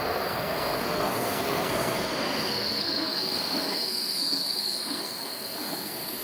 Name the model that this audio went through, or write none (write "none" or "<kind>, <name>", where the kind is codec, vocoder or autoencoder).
codec, SNAC